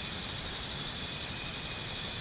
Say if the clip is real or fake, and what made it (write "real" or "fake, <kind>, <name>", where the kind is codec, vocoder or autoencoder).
real